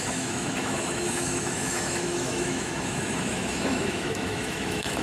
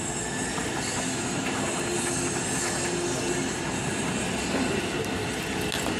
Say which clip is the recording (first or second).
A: second